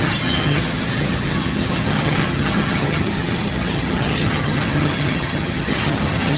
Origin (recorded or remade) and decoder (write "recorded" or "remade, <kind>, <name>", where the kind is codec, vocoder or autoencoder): remade, vocoder, HiFi-GAN